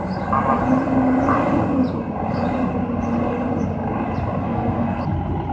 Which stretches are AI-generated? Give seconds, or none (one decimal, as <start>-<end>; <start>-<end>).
4.4-5.0

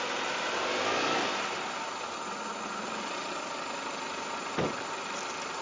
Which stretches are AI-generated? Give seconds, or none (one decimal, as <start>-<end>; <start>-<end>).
none